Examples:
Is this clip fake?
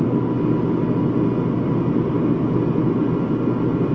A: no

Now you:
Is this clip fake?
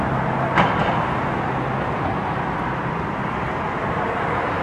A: no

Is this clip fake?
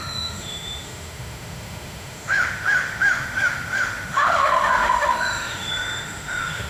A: yes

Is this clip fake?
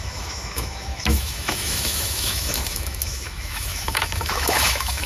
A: yes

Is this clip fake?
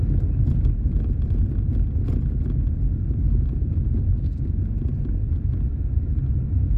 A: no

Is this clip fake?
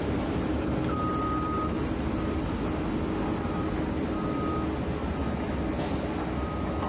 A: no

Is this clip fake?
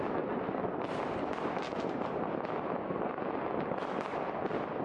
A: no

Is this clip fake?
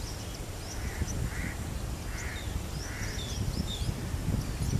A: no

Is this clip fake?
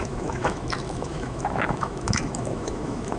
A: yes